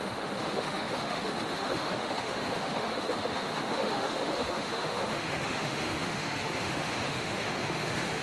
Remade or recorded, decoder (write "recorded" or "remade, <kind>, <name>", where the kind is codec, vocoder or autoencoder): remade, autoencoder, DAC-VAE